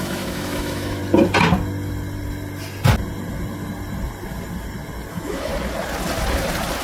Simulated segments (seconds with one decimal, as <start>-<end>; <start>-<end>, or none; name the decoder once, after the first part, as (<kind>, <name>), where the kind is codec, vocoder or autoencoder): 0.0-1.0 (autoencoder, DAC-VAE); 5.1-5.5